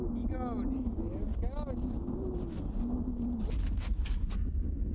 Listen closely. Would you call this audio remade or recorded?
recorded